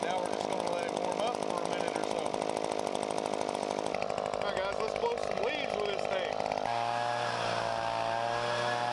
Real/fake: real